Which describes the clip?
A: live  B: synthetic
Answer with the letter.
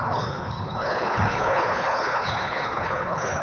B